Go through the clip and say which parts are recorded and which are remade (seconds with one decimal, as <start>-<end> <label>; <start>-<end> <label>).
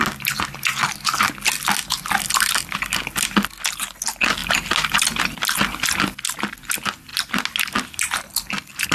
0.0-8.9 recorded